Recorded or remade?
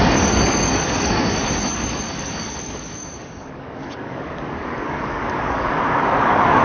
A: remade